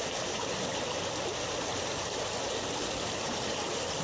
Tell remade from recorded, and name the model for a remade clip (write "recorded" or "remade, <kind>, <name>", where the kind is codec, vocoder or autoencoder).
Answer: recorded